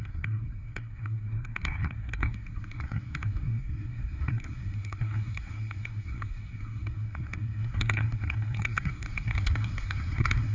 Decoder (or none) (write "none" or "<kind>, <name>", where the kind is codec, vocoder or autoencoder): codec, SNAC